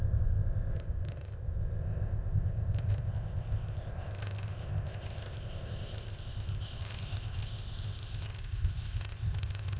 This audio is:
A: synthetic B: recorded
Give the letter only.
A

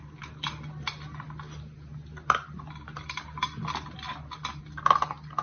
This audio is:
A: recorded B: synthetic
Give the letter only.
A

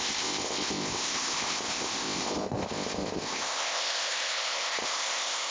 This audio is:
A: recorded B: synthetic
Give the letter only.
B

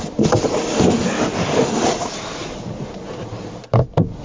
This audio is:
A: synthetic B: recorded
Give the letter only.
B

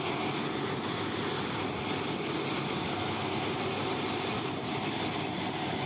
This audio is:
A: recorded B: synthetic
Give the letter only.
A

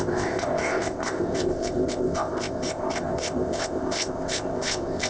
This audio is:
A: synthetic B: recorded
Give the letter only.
A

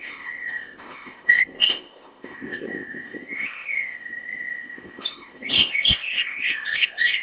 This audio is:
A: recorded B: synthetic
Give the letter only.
B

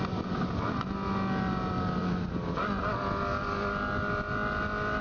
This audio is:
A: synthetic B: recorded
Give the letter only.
B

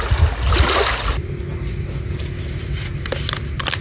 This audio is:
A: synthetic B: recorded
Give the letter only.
B